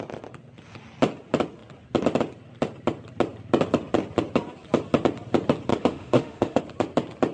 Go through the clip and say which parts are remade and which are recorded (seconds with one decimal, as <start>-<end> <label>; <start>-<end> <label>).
0.0-5.7 recorded; 5.7-6.6 remade; 6.6-7.3 recorded